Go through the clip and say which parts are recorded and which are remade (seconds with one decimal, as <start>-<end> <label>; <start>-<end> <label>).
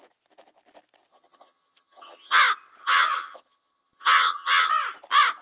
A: 0.0-1.1 recorded; 1.1-2.4 remade; 2.4-2.8 recorded; 2.8-4.7 remade; 4.7-5.4 recorded